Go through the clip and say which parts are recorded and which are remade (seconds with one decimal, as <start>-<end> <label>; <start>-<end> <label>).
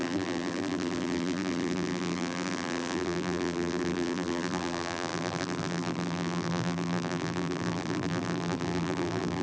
0.0-9.4 remade